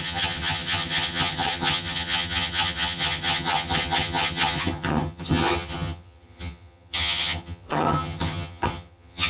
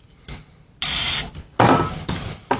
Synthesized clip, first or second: first